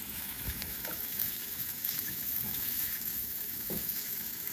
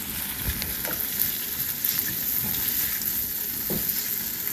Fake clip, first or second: first